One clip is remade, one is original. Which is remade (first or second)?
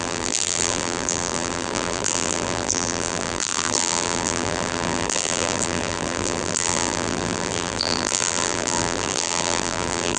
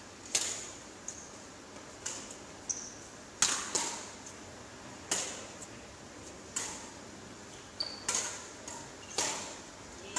first